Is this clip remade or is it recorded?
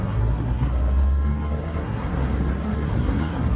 remade